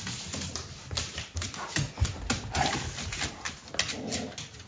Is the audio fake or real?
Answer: real